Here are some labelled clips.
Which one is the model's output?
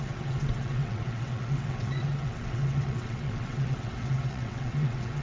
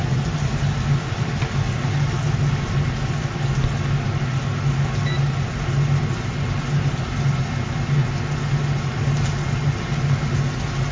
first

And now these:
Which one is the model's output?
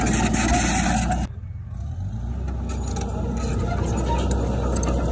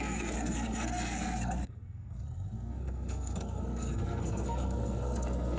second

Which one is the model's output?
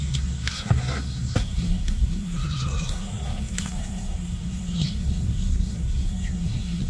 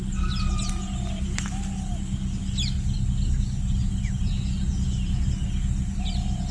first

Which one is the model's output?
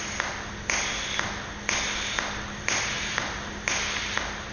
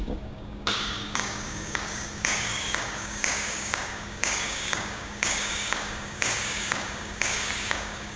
second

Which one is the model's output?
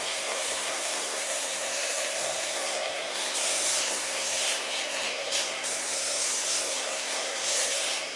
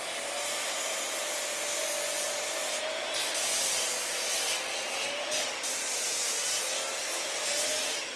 first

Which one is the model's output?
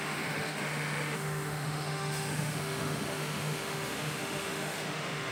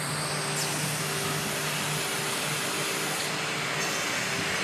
first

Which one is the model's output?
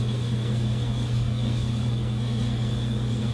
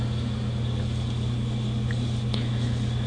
first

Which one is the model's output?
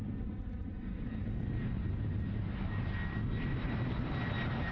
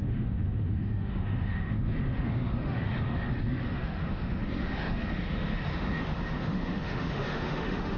second